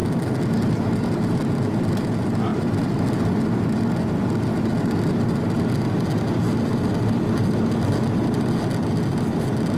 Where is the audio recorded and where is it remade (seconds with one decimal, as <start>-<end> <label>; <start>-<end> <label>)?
0.0-9.8 recorded